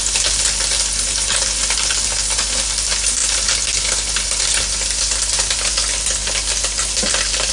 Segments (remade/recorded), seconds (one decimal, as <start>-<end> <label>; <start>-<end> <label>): 0.0-7.5 recorded